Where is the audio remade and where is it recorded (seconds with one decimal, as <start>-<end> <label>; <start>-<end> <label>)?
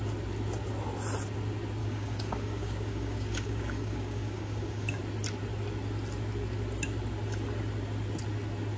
0.0-1.8 recorded; 1.8-5.0 remade; 5.0-8.8 recorded